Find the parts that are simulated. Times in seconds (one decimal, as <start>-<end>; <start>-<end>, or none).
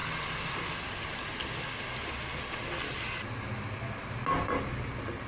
none